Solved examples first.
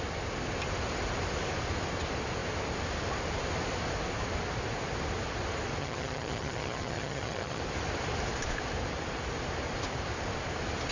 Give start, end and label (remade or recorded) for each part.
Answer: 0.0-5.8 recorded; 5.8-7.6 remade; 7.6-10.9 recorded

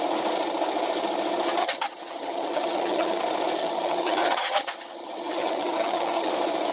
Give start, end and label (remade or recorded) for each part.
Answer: 0.0-1.6 recorded; 1.6-3.2 remade; 3.2-3.6 recorded; 3.6-6.3 remade; 6.3-6.7 recorded

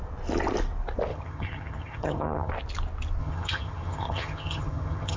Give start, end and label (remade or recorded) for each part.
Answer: 0.0-1.1 recorded; 1.1-2.5 remade; 2.5-3.2 recorded; 3.2-5.2 remade

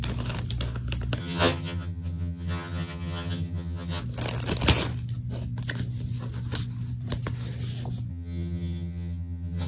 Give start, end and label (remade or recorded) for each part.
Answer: 0.0-1.2 recorded; 1.2-4.0 remade; 4.0-8.1 recorded; 8.1-9.7 remade

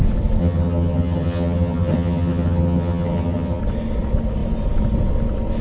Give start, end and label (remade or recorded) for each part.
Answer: 0.0-0.4 recorded; 0.4-3.6 remade; 3.6-5.6 recorded

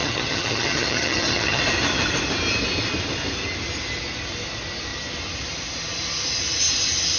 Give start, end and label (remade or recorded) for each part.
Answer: 0.0-1.6 remade; 1.6-7.2 recorded

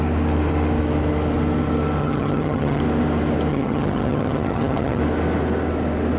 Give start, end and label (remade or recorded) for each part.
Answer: 0.0-2.0 recorded; 2.0-2.8 remade; 2.8-3.5 recorded; 3.5-5.0 remade; 5.0-6.2 recorded